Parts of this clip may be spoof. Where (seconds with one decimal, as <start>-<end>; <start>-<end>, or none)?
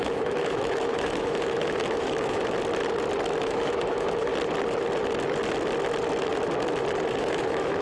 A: 0.0-2.4; 3.4-4.3; 7.2-7.8